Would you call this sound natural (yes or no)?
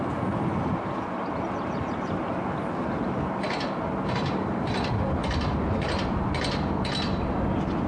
yes